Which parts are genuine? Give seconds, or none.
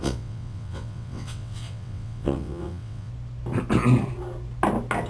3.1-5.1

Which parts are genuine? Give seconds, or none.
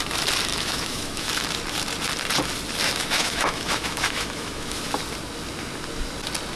0.0-0.5; 1.3-2.8; 4.9-6.6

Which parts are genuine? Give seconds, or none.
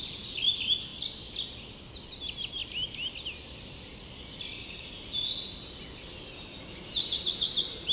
0.0-7.9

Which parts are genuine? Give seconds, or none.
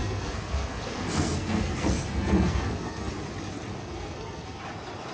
3.1-3.8; 4.6-5.1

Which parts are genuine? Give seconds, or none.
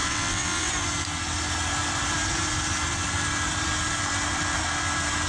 0.7-5.3